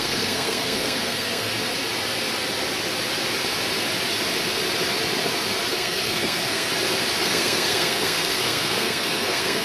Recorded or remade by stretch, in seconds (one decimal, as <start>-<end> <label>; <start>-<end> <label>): 0.0-1.5 remade; 1.5-5.7 recorded; 5.7-6.7 remade; 6.7-7.2 recorded; 7.2-9.6 remade